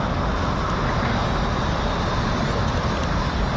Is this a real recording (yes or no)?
yes